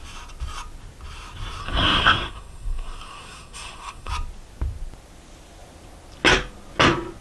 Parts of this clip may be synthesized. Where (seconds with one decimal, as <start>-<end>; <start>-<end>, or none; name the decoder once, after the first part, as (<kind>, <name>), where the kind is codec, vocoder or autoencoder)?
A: 1.6-4.1 (codec, SNAC)